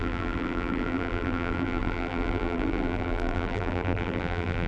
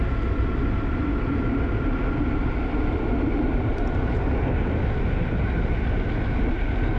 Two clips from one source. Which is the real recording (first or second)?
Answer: second